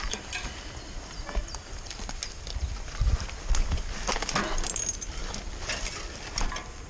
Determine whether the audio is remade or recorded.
recorded